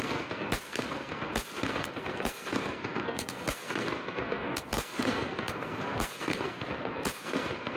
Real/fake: fake